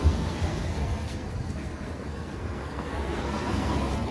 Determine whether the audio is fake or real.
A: fake